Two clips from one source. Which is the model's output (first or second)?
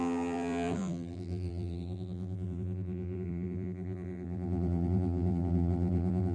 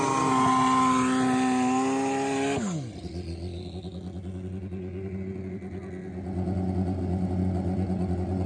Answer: first